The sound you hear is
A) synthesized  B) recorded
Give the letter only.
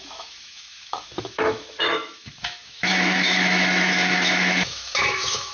A